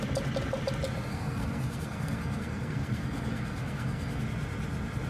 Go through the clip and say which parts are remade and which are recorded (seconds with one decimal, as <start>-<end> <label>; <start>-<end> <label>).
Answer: 0.0-1.1 recorded; 1.1-4.2 remade; 4.2-5.1 recorded